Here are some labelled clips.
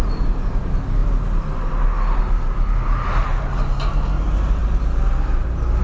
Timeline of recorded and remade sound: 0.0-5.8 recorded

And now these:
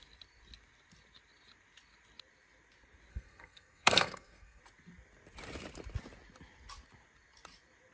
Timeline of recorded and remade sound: 0.0-3.1 recorded; 3.1-4.6 remade; 4.6-7.9 recorded

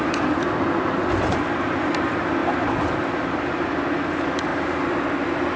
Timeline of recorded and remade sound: 0.0-5.6 recorded

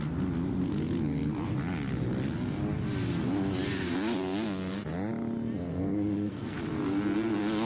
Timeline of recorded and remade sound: 0.0-5.7 recorded; 5.7-6.6 remade; 6.6-7.6 recorded

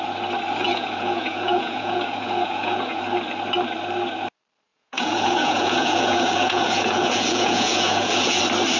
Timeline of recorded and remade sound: 0.0-0.7 recorded; 0.7-3.0 remade; 3.0-4.7 recorded; 4.7-8.4 remade; 8.4-8.8 recorded